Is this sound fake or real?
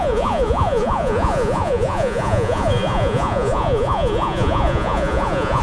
fake